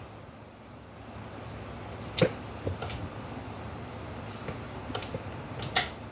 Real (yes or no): yes